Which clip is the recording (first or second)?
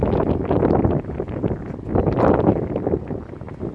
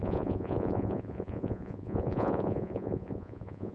first